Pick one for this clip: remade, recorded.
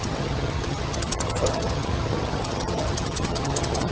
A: remade